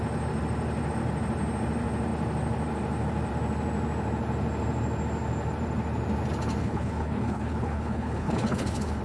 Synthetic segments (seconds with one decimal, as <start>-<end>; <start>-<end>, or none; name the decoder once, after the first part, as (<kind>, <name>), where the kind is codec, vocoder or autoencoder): 6.6-9.0 (codec, HILCodec)